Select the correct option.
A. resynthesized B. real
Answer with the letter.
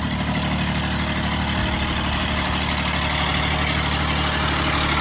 B